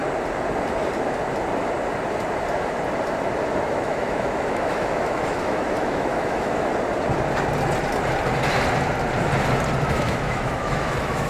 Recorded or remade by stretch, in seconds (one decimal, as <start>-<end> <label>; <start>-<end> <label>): 0.0-3.7 recorded; 3.7-6.7 remade; 6.7-9.9 recorded; 9.9-11.3 remade